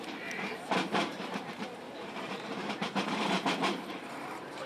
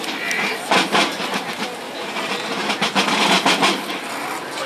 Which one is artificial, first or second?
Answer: first